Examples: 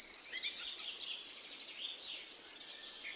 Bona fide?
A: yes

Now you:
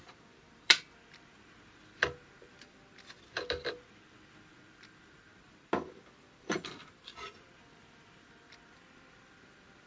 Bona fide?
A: no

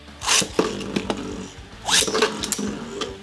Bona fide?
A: yes